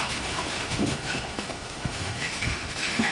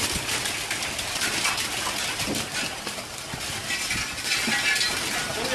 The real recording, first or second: second